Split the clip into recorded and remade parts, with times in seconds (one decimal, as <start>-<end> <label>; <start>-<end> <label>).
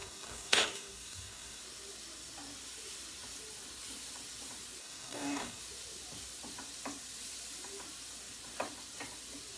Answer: 0.0-1.6 remade; 1.6-4.8 recorded; 4.8-5.6 remade; 5.6-9.6 recorded